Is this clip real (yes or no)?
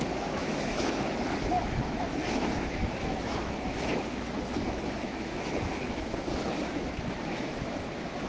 no